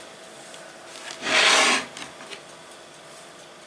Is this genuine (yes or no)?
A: yes